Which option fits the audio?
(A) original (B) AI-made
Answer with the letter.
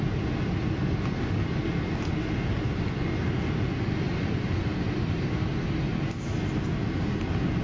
A